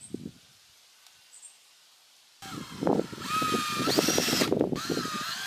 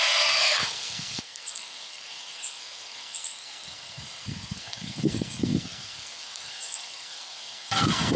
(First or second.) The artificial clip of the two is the second